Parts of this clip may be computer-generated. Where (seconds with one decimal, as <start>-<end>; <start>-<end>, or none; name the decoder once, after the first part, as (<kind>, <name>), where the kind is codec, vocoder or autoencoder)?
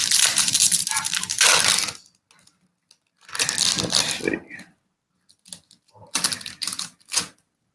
0.0-1.4 (vocoder, BigVGAN v2)